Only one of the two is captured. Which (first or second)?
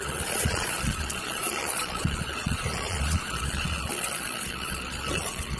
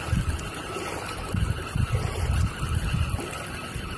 second